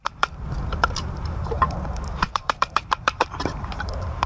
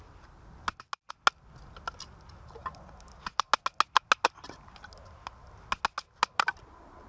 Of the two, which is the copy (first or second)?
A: first